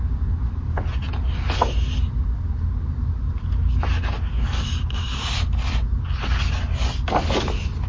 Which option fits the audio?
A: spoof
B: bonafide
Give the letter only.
B